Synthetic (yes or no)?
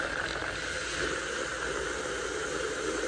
no